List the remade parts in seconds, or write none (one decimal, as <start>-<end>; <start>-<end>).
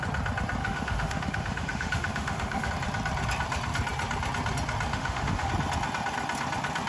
0.6-2.7; 4.9-5.5